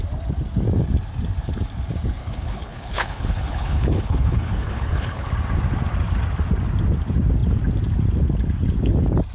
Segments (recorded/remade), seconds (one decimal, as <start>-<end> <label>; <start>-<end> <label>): 0.0-2.2 recorded; 2.2-5.3 remade; 5.3-9.3 recorded